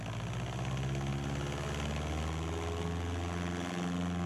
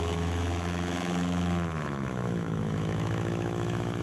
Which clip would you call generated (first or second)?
second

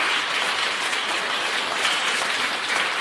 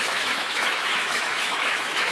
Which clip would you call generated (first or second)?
second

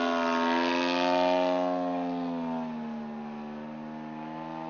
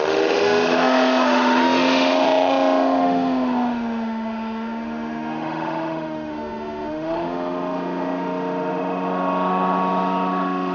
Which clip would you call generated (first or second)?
second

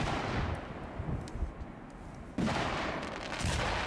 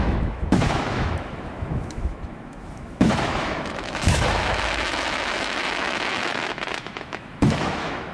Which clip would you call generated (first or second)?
second